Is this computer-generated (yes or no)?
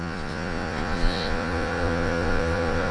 yes